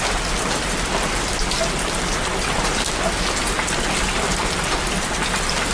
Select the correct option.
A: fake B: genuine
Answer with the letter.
A